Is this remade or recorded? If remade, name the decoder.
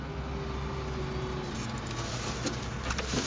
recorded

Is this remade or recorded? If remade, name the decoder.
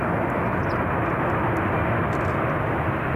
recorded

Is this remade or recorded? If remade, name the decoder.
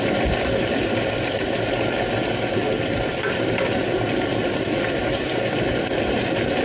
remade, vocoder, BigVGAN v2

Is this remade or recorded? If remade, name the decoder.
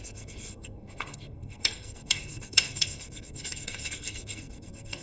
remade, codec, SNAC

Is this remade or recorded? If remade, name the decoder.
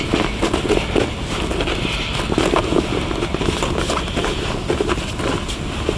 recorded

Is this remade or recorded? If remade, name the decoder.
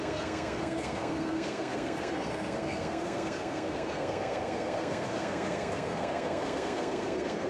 remade, codec, SNAC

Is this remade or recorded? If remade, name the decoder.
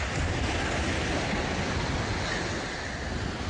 recorded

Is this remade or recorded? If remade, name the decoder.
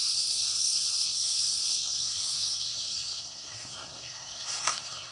remade, codec, SNAC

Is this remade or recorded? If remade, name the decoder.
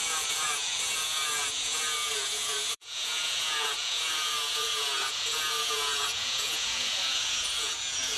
remade, vocoder, Vocos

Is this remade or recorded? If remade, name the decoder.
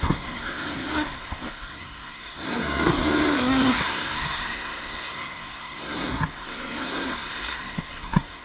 remade, codec, SNAC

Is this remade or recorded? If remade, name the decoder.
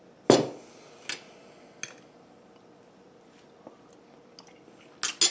recorded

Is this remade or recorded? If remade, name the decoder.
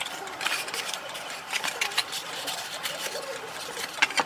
remade, vocoder, BigVGAN v2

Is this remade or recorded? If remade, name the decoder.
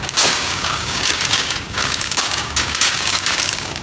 remade, codec, DAC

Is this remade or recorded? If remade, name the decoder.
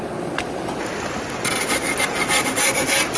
recorded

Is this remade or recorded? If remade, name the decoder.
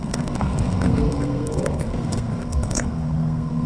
remade, codec, SNAC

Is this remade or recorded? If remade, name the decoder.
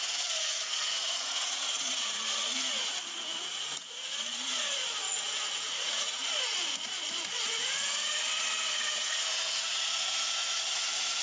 remade, vocoder, Vocos